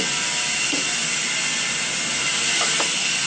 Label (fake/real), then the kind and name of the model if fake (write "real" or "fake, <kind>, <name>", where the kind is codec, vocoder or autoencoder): real